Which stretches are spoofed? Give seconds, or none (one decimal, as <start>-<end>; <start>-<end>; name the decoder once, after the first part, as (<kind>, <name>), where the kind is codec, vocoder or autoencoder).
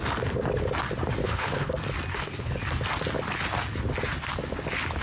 1.2-1.7 (codec, HILCodec); 2.1-2.6